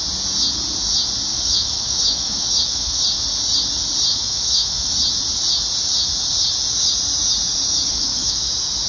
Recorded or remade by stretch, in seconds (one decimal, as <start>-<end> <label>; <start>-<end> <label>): 0.0-1.3 recorded; 1.3-3.0 remade; 3.0-4.1 recorded; 4.1-4.9 remade; 4.9-7.9 recorded; 7.9-8.5 remade; 8.5-8.9 recorded